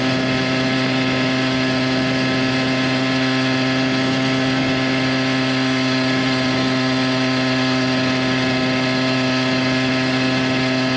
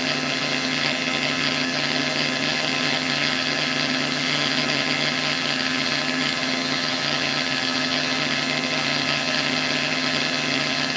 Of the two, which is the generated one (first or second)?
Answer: second